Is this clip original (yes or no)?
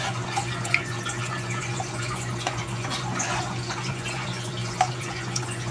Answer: no